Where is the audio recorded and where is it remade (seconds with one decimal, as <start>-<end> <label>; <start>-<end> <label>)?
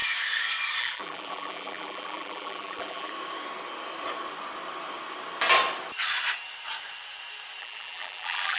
0.0-0.8 recorded; 0.8-3.1 remade; 3.1-7.6 recorded; 7.6-8.6 remade